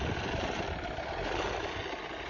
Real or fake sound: real